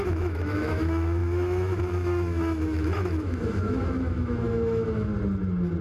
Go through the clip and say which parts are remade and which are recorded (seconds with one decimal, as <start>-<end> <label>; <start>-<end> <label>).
0.0-5.1 remade; 5.1-5.8 recorded